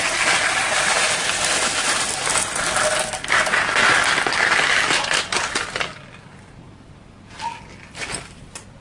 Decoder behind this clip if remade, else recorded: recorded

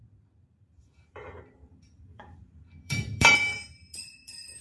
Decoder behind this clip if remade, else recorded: remade, vocoder, BigVGAN v2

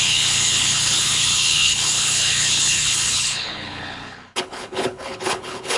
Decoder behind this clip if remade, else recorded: remade, codec, HILCodec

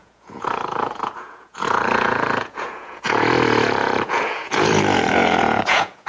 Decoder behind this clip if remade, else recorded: remade, vocoder, Vocos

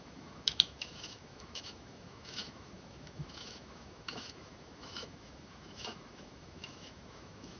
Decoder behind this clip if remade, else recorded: remade, autoencoder, DAC-VAE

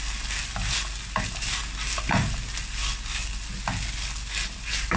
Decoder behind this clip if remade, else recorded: recorded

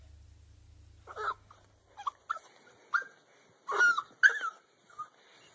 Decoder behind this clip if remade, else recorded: recorded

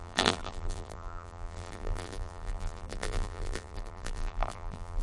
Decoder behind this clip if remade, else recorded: remade, vocoder, BigVGAN v2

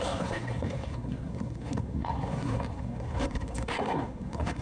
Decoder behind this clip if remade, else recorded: remade, codec, SNAC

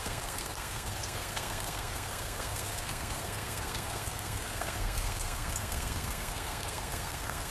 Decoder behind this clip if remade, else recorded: remade, codec, SNAC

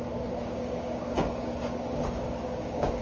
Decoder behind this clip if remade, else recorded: remade, codec, DAC